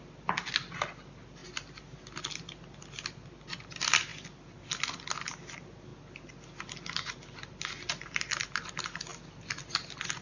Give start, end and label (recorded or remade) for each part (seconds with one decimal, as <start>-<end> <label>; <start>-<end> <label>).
0.0-10.2 recorded